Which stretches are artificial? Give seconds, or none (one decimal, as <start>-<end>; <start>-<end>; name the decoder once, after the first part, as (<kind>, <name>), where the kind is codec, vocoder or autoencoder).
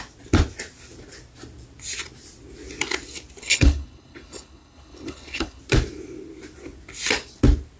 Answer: 3.4-5.6 (codec, HILCodec)